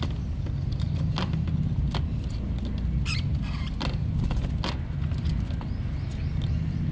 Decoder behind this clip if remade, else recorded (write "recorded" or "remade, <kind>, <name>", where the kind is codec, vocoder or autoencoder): recorded